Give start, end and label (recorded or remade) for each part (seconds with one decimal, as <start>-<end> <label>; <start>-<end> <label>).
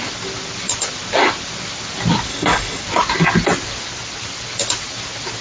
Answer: 0.0-2.3 recorded; 2.3-2.8 remade; 2.8-5.4 recorded